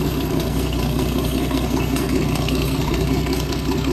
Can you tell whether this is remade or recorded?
remade